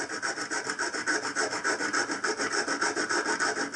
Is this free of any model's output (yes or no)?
yes